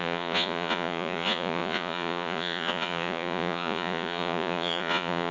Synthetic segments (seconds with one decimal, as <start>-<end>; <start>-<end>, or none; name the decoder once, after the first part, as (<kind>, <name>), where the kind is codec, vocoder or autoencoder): 0.0-5.3 (vocoder, Vocos)